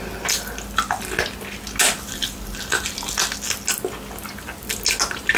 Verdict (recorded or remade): recorded